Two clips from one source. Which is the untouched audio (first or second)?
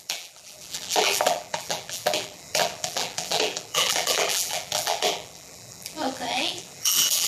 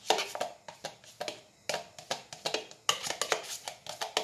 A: second